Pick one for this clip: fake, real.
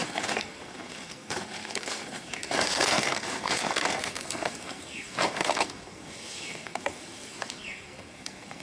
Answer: fake